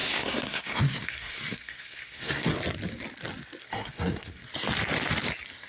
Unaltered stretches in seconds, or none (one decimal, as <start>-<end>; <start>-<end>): 2.5-3.6; 4.5-5.7